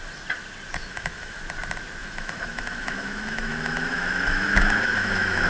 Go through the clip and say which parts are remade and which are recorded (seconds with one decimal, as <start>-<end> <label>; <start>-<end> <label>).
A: 0.0-0.8 recorded; 0.8-1.4 remade; 1.4-2.0 recorded; 2.0-5.5 remade

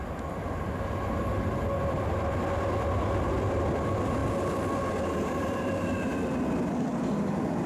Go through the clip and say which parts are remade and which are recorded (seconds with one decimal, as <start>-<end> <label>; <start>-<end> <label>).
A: 0.0-7.7 recorded

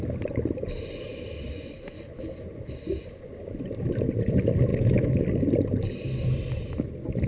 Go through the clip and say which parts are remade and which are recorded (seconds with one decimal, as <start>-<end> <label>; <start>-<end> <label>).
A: 0.0-4.7 recorded; 4.7-5.2 remade; 5.2-7.3 recorded

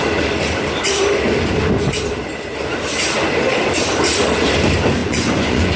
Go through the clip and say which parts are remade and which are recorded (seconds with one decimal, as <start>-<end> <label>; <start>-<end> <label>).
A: 0.0-5.0 recorded; 5.0-5.8 remade

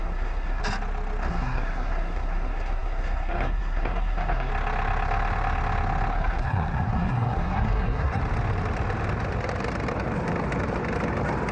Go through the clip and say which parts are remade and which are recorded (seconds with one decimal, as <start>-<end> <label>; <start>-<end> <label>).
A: 0.0-0.6 remade; 0.6-1.3 recorded; 1.3-4.5 remade; 4.5-6.1 recorded; 6.1-8.2 remade; 8.2-11.5 recorded

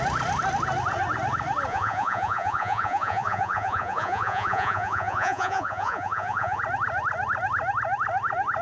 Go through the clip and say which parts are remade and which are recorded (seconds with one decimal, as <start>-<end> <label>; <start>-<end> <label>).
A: 0.0-1.7 recorded; 1.7-6.6 remade; 6.6-8.6 recorded